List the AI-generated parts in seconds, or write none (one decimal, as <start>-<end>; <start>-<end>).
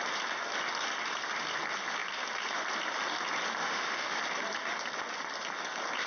3.6-4.2